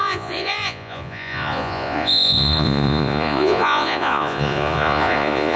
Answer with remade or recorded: remade